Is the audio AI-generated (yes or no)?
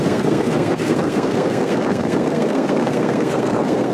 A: yes